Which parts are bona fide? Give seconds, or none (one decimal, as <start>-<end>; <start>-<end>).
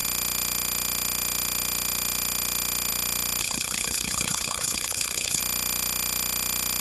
0.0-3.4; 5.4-6.8